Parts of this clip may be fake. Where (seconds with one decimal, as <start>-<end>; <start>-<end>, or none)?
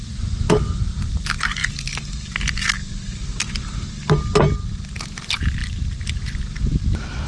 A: none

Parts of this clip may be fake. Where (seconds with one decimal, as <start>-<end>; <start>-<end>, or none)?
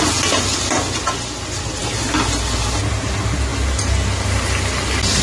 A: none